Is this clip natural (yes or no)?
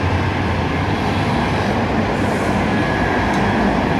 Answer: yes